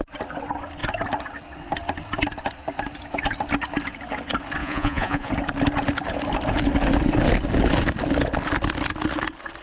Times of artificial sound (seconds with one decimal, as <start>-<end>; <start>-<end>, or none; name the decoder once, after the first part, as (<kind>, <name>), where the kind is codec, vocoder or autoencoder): 4.6-5.3 (vocoder, Vocos)